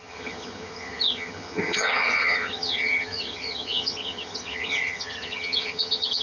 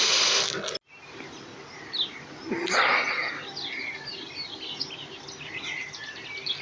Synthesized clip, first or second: first